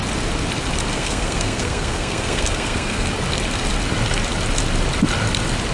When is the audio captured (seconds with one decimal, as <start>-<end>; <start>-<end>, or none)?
0.0-0.9; 3.1-5.7